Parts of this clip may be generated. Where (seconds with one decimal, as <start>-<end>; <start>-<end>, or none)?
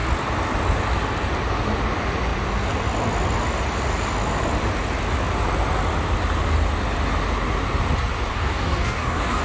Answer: 8.3-9.4